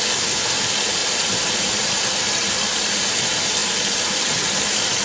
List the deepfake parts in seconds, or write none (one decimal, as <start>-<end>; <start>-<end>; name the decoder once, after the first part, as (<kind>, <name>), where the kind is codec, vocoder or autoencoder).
1.0-3.2 (vocoder, BigVGAN v2)